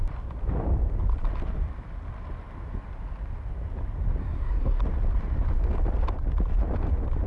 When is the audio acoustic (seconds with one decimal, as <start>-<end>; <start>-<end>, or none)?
0.0-4.2; 4.8-7.3

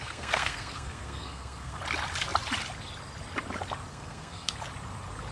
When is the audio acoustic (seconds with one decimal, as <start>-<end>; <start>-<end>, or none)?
1.8-3.9; 4.5-5.3

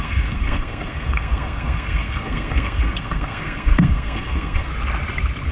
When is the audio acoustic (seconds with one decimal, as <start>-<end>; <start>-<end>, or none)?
4.7-5.5

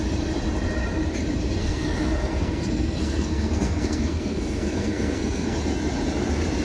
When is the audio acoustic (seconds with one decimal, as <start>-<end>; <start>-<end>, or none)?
0.0-1.6; 5.6-6.6

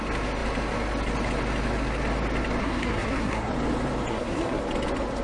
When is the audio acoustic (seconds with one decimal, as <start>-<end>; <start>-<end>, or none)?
0.0-2.6; 3.5-4.1; 4.6-5.2